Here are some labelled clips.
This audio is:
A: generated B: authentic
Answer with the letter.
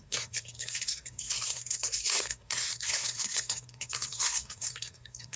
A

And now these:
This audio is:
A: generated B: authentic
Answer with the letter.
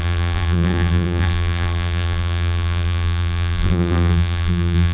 A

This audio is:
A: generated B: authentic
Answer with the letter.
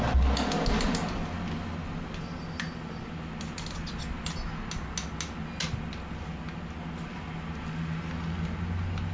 B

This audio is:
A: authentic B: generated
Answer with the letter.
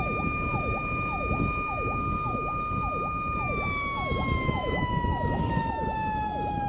B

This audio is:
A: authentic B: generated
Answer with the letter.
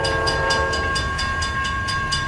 B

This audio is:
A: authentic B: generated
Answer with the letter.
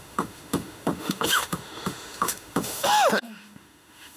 B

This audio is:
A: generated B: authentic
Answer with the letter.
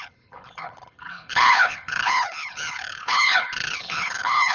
A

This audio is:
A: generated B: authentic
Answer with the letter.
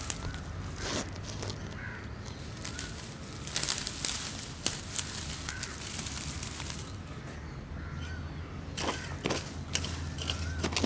B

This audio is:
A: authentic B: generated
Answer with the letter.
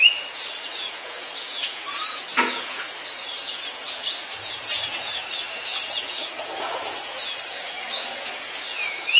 B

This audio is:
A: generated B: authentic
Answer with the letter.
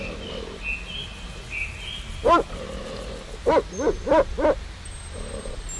B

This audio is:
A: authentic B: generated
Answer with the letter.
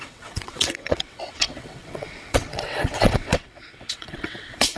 B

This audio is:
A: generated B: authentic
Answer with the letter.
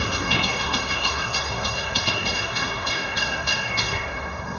A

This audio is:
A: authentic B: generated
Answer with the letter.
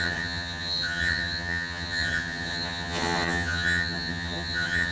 B